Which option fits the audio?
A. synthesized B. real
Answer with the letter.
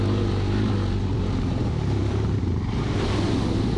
B